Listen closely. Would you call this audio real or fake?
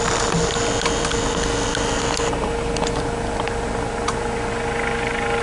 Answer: real